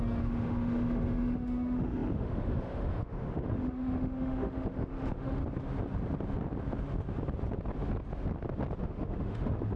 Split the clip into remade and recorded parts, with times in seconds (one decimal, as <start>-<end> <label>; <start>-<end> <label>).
0.0-5.4 remade; 5.4-8.8 recorded; 8.8-9.8 remade